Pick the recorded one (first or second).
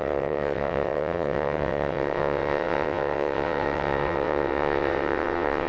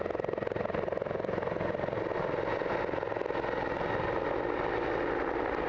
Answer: second